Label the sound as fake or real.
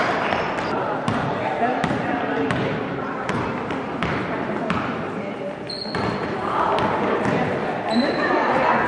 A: fake